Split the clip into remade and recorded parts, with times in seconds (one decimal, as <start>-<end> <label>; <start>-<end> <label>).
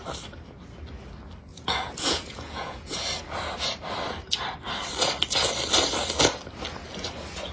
0.0-1.5 recorded; 1.5-3.0 remade; 3.0-7.5 recorded